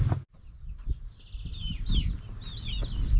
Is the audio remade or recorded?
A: recorded